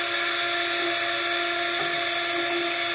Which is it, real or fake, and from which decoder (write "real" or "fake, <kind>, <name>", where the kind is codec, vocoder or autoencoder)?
real